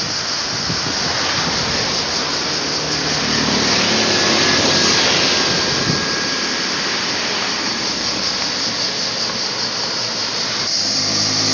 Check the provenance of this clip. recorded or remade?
recorded